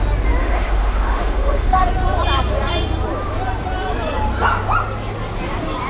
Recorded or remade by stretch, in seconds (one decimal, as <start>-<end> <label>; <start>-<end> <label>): 0.0-0.4 recorded; 0.4-1.9 remade; 1.9-5.9 recorded